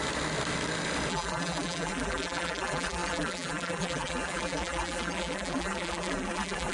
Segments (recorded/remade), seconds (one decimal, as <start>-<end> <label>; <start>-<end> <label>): 0.0-1.1 recorded; 1.1-6.7 remade